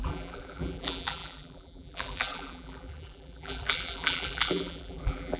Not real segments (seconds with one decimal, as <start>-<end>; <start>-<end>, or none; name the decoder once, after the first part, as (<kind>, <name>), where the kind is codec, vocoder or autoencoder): 0.0-5.4 (vocoder, BigVGAN v2)